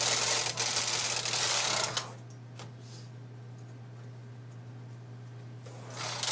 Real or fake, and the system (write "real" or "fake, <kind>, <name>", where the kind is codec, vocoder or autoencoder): real